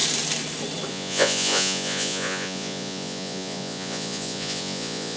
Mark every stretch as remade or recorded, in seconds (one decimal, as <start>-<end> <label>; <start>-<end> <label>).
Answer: 0.0-0.9 recorded; 0.9-5.2 remade